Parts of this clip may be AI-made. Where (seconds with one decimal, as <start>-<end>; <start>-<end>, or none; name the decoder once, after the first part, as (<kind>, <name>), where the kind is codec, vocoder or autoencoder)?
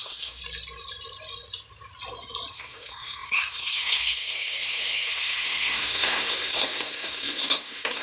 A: 0.0-0.4 (codec, SNAC); 2.5-8.0